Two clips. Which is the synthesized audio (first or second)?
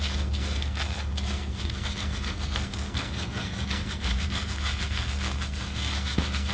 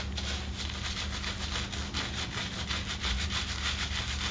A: first